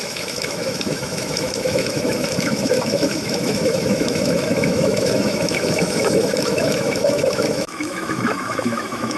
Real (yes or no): no